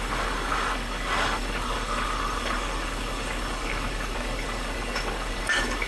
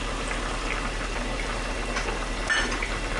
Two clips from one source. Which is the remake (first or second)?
first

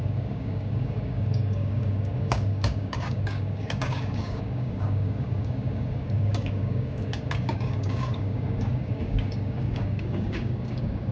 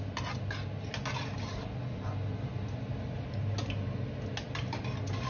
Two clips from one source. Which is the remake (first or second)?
first